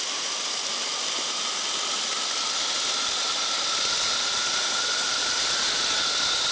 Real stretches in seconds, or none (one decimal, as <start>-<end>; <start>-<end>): 0.0-5.2; 5.7-6.5